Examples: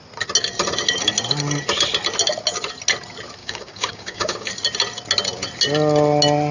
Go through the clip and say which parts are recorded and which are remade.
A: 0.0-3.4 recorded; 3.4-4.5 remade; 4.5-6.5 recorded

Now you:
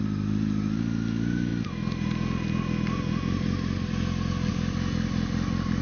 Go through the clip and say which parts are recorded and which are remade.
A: 0.0-5.8 recorded